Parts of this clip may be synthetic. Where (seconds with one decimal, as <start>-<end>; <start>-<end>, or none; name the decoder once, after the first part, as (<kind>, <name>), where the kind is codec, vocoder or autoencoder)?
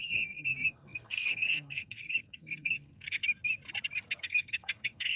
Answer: 0.0-3.2 (codec, SNAC); 4.2-5.2